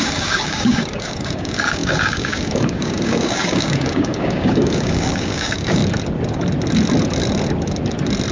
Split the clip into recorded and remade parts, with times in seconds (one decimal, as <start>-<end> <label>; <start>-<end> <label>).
0.0-5.8 remade; 5.8-8.3 recorded